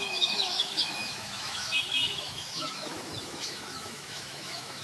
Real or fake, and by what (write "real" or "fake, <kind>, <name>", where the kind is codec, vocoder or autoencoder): fake, autoencoder, DAC-VAE